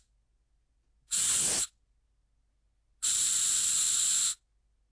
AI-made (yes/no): no